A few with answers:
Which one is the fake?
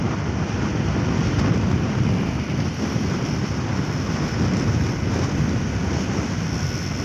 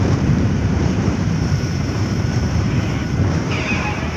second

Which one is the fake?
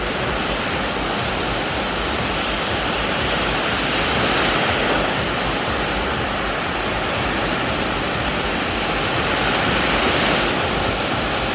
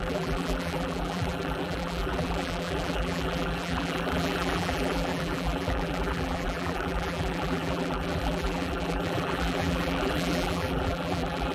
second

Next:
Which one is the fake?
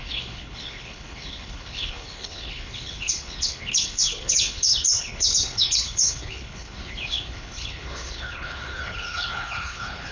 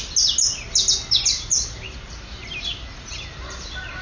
first